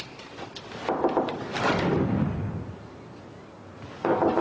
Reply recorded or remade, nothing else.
recorded